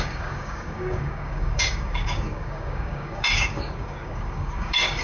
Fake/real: fake